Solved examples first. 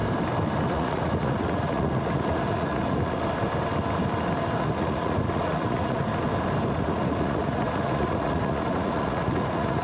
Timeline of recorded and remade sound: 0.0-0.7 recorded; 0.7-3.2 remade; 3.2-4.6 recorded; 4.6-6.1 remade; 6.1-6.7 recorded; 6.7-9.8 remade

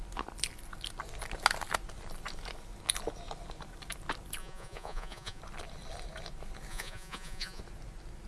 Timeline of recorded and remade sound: 0.0-4.4 recorded; 4.4-5.4 remade; 5.4-6.7 recorded; 6.7-7.6 remade; 7.6-8.3 recorded